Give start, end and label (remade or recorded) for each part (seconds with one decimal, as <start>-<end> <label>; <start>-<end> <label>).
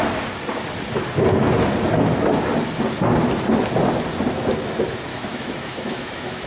0.0-5.1 recorded; 5.1-6.5 remade